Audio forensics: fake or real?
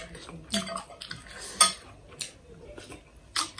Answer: real